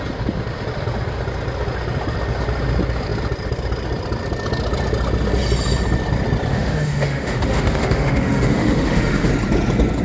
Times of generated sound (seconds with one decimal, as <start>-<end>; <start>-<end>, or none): 6.5-9.3